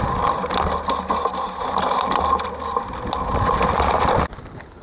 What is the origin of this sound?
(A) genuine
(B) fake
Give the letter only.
A